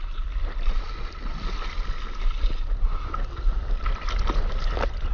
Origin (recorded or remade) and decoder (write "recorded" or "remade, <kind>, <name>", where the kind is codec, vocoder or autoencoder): recorded